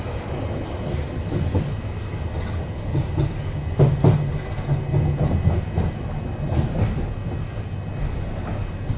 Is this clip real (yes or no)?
yes